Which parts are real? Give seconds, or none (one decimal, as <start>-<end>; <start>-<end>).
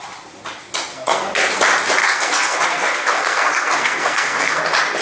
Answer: 0.0-0.9; 1.6-2.0; 4.6-5.0